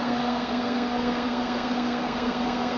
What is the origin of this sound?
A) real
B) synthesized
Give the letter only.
B